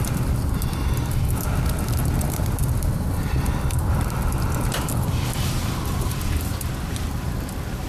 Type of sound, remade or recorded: remade